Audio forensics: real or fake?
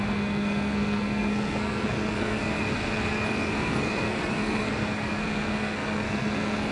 fake